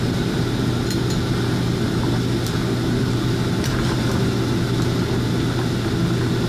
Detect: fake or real real